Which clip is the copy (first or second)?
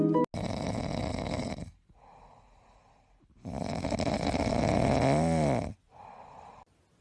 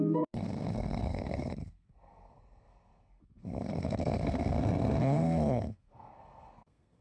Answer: second